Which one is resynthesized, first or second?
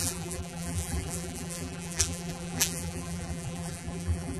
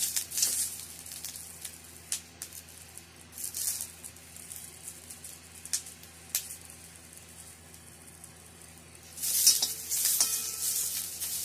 first